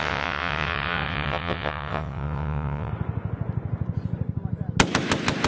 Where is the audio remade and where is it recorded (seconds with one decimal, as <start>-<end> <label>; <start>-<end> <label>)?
0.0-2.9 remade; 2.9-5.5 recorded